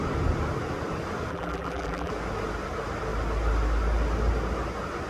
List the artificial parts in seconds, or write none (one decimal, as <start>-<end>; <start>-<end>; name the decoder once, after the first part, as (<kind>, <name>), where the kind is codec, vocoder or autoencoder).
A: 1.3-2.1 (vocoder, BigVGAN v2)